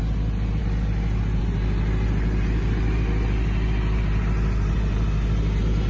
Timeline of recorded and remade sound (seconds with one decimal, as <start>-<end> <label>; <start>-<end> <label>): 0.0-5.9 recorded